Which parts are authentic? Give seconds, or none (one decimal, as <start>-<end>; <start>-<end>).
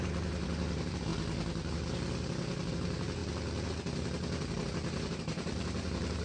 1.1-2.7; 3.2-4.7